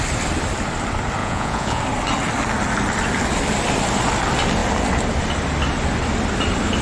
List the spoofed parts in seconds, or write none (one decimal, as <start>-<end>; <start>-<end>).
1.2-1.8